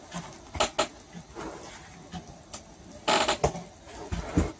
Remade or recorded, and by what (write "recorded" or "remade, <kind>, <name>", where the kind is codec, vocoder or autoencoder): recorded